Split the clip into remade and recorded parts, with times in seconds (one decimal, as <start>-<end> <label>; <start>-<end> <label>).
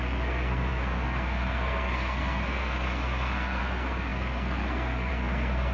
0.0-5.7 remade